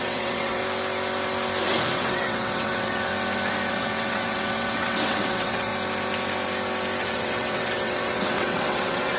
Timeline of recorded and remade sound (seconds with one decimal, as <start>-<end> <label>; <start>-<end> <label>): 0.0-0.6 remade; 0.6-1.9 recorded; 1.9-3.1 remade; 3.1-3.7 recorded; 3.7-5.7 remade; 5.7-7.0 recorded; 7.0-9.2 remade